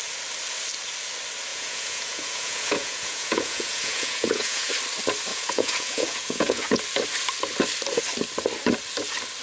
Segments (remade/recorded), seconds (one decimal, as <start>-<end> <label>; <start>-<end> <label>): 0.0-1.5 recorded; 1.5-4.7 remade; 4.7-5.3 recorded; 5.3-6.8 remade; 6.8-9.4 recorded

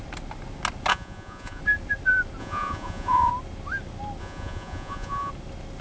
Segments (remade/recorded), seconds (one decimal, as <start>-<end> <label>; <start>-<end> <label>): 0.0-0.9 recorded; 0.9-1.6 remade; 1.6-2.4 recorded; 2.4-3.3 remade; 3.3-4.2 recorded; 4.2-5.3 remade; 5.3-5.8 recorded

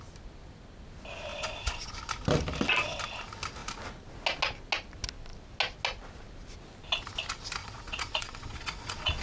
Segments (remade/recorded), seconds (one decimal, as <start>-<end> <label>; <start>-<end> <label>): 0.0-1.3 recorded; 1.3-1.9 remade; 1.9-7.6 recorded; 7.6-9.2 remade